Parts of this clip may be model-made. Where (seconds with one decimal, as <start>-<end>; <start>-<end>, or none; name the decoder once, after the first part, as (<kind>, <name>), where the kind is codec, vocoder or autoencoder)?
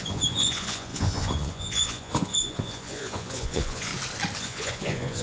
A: 0.0-3.9 (vocoder, Vocos); 4.4-5.2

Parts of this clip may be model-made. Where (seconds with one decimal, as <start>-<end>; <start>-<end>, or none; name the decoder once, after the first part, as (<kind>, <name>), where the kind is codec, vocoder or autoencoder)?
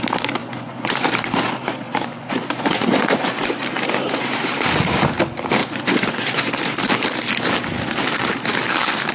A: 0.4-3.6 (vocoder, Vocos); 5.6-6.5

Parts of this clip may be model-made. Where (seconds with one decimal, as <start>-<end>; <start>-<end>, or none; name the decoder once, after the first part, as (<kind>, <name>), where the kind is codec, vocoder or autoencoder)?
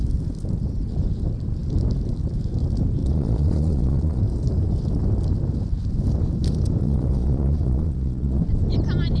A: 3.0-4.2 (vocoder, Vocos); 6.8-8.4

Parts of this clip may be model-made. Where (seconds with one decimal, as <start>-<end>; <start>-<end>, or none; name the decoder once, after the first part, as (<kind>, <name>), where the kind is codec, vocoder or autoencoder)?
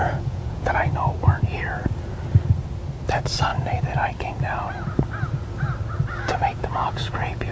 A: 0.0-0.7 (vocoder, Vocos); 6.5-7.5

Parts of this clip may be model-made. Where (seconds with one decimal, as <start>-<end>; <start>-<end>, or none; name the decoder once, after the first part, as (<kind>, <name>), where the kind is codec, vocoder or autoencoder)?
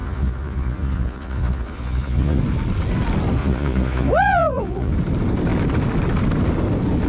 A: 0.0-2.4 (vocoder, Vocos); 3.4-4.9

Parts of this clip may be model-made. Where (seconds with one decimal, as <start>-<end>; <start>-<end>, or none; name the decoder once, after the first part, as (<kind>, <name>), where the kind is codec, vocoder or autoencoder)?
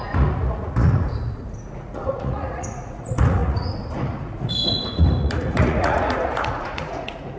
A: 0.0-7.4 (vocoder, Vocos)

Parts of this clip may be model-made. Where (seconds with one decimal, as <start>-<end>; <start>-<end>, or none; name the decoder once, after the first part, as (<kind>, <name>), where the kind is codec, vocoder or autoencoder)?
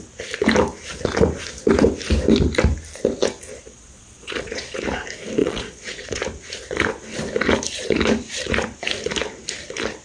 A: 3.5-4.8 (vocoder, Vocos); 5.4-6.2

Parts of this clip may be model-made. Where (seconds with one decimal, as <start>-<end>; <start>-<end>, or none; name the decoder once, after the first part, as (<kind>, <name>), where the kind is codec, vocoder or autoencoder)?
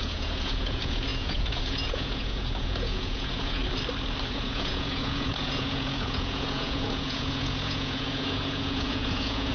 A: 0.0-3.6 (vocoder, Vocos); 4.3-9.5